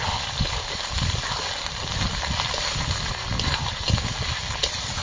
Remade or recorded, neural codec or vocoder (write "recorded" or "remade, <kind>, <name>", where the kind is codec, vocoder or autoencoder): remade, vocoder, BigVGAN v2